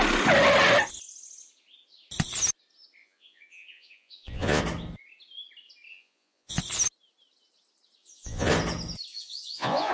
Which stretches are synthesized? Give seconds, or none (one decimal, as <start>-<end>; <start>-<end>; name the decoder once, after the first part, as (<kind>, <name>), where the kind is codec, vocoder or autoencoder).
3.0-4.6 (vocoder, Vocos); 5.9-6.6; 8.0-8.5; 9.1-9.9